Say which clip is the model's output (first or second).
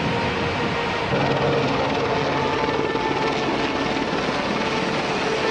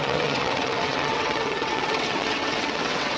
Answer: second